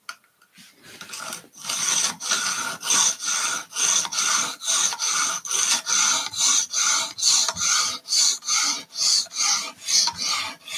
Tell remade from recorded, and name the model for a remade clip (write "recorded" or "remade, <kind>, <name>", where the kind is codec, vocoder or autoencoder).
recorded